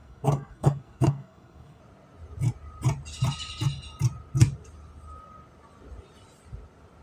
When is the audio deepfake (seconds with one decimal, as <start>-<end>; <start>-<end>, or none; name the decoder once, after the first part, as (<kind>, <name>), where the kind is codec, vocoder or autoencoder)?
0.0-1.8 (codec, SNAC)